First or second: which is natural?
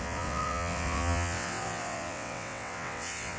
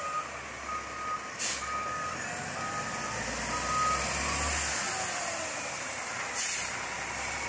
second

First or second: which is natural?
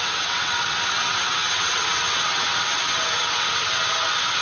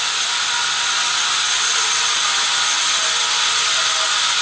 second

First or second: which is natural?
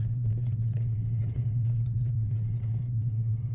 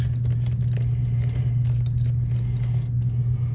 second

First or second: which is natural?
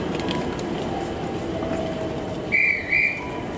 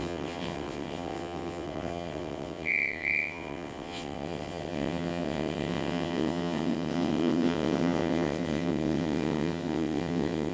first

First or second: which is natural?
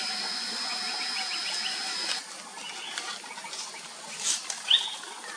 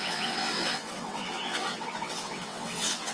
first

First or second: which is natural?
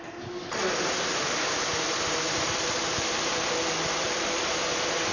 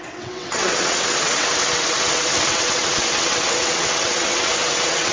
first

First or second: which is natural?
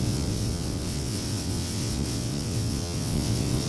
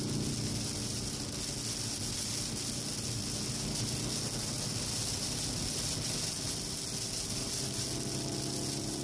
second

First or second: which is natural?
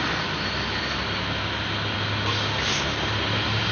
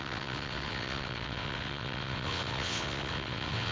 first